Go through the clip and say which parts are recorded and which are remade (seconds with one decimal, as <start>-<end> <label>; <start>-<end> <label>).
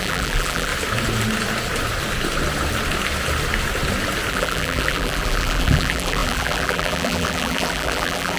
0.0-0.7 remade; 0.7-4.3 recorded; 4.3-8.4 remade